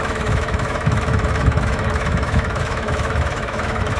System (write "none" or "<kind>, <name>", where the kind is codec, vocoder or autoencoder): autoencoder, DAC-VAE